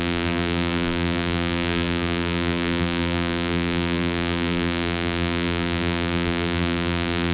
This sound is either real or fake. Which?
fake